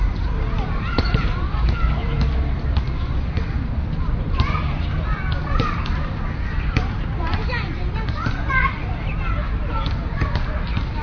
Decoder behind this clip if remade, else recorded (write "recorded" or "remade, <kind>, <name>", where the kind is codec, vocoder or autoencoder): remade, vocoder, BigVGAN v2